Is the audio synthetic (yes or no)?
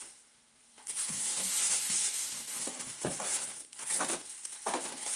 yes